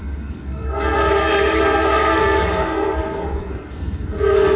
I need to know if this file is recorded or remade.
remade